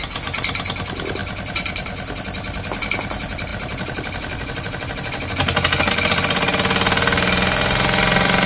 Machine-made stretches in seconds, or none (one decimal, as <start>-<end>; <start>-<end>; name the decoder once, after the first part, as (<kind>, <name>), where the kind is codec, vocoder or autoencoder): none